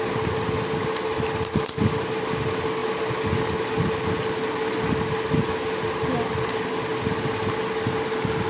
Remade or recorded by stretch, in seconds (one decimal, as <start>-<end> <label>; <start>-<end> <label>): 0.0-8.5 recorded

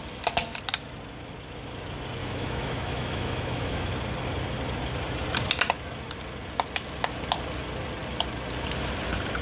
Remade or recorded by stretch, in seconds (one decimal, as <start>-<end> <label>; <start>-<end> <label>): 0.0-2.2 recorded; 2.2-3.9 remade; 3.9-9.4 recorded